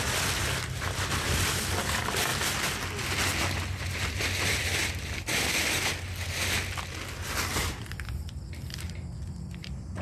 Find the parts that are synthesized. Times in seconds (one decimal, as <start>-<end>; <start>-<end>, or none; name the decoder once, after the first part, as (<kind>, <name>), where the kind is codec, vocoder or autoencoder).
0.0-2.3 (vocoder, BigVGAN v2); 3.0-4.8; 7.5-10.0